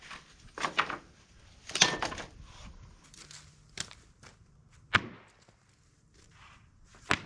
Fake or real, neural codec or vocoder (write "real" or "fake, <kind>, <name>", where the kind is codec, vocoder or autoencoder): real